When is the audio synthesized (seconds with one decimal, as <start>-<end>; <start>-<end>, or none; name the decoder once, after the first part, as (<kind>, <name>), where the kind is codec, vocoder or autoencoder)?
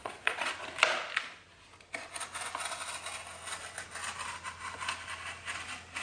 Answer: 0.0-0.5 (vocoder, Vocos)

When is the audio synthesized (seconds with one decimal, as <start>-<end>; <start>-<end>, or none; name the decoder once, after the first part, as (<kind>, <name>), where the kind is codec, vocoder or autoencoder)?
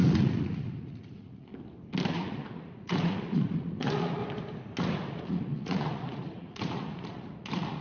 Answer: 0.0-1.5 (vocoder, Vocos); 2.1-4.2; 4.8-7.8